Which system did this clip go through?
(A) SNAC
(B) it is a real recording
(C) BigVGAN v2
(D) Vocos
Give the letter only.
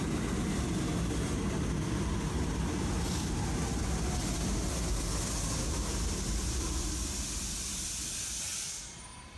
B